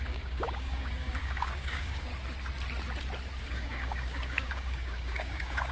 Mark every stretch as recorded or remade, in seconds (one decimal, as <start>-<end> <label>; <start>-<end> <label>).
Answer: 0.0-2.1 remade; 2.1-3.4 recorded; 3.4-5.7 remade